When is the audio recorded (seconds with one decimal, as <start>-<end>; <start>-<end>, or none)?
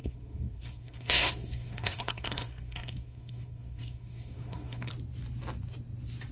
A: 4.9-6.3